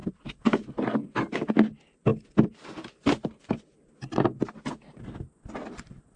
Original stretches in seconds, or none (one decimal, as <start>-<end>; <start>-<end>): 1.5-2.1; 4.2-6.2